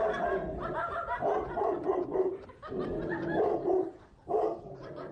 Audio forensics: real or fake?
fake